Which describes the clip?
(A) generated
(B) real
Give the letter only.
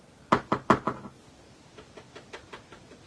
B